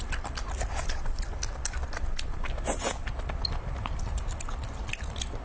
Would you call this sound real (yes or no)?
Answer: yes